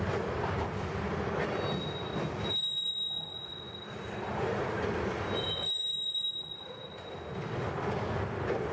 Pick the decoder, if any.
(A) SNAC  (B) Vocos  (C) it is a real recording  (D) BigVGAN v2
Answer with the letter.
C